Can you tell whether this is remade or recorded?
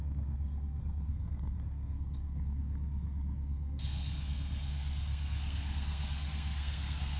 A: remade